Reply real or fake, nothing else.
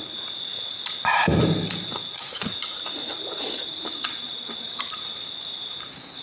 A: fake